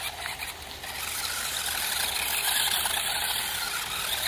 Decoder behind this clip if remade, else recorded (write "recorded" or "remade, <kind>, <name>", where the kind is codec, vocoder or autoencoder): recorded